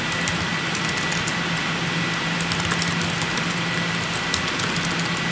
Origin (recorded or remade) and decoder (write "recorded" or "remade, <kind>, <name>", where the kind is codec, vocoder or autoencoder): recorded